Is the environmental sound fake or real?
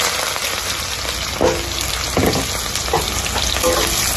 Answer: real